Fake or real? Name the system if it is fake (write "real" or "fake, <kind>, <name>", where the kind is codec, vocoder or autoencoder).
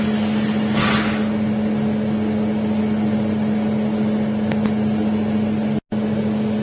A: real